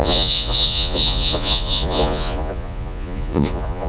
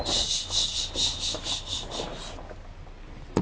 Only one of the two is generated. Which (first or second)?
first